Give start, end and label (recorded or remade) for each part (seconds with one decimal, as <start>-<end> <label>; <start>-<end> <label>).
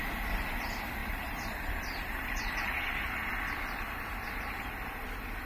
0.0-1.0 recorded; 1.0-3.3 remade; 3.3-5.5 recorded